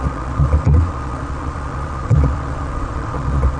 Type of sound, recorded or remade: remade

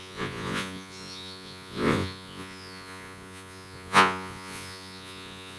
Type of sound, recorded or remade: remade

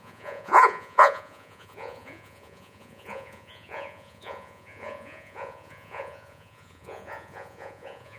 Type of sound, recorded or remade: remade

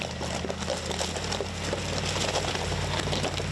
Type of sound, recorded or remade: recorded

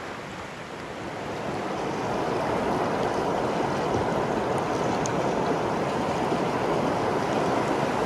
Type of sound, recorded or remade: recorded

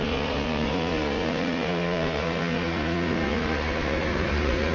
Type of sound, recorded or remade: remade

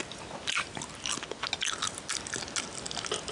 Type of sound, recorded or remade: recorded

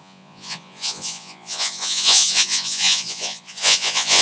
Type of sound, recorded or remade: remade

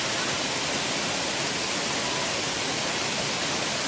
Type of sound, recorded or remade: recorded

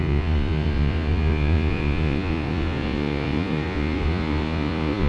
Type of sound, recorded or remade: remade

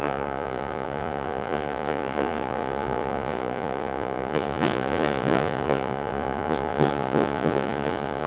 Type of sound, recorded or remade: remade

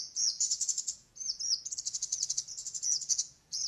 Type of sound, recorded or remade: remade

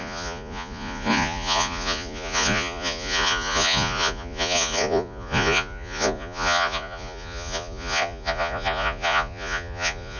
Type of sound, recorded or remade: remade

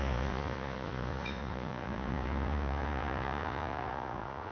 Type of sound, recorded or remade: remade